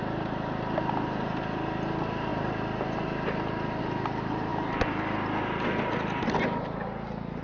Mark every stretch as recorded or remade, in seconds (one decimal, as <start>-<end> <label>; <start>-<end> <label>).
0.0-7.4 recorded